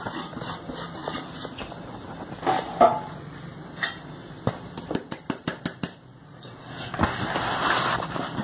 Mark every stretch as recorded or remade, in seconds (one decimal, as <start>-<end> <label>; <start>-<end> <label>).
0.0-6.1 recorded; 6.1-6.7 remade; 6.7-8.4 recorded

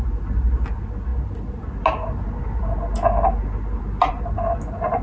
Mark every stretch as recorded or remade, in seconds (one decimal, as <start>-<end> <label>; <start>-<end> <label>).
0.0-5.0 recorded

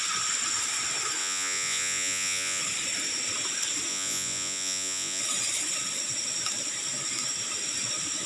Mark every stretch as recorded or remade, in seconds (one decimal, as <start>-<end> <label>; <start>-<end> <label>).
0.0-1.2 recorded; 1.2-2.6 remade; 2.6-3.9 recorded; 3.9-5.2 remade; 5.2-8.3 recorded

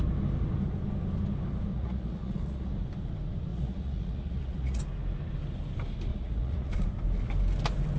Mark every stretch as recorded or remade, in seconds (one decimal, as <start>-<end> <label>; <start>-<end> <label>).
0.0-1.7 recorded; 1.7-2.7 remade; 2.7-3.5 recorded; 3.5-4.8 remade; 4.8-6.1 recorded; 6.1-6.7 remade; 6.7-8.0 recorded